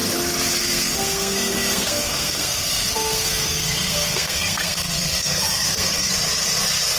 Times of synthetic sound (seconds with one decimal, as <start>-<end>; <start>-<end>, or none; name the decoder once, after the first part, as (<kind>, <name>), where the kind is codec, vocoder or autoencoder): 0.6-6.1 (codec, SNAC)